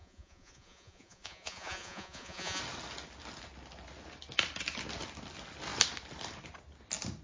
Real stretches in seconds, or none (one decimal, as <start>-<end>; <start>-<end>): 2.6-7.2